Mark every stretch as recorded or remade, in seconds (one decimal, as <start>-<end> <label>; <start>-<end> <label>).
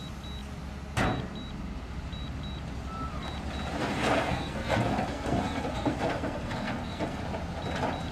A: 0.0-3.8 recorded; 3.8-7.2 remade; 7.2-8.1 recorded